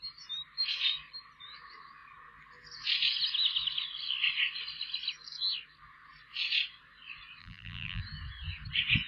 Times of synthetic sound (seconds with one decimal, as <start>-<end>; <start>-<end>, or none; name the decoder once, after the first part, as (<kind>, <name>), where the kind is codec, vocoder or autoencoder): 7.4-8.0 (vocoder, BigVGAN v2)